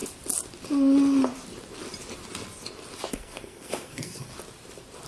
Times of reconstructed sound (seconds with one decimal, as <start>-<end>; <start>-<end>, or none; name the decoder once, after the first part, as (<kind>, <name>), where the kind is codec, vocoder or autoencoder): 3.1-4.3 (codec, SNAC)